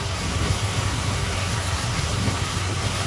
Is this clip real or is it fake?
fake